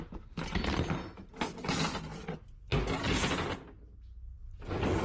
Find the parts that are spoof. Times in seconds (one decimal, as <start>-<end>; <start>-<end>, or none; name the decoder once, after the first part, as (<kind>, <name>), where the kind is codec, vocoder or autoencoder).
none